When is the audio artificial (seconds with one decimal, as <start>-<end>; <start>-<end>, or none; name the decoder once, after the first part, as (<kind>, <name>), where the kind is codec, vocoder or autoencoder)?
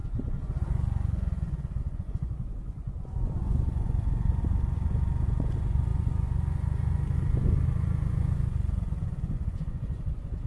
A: 0.0-10.5 (vocoder, Vocos)